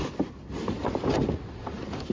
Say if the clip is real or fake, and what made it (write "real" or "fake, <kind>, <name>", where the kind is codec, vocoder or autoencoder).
real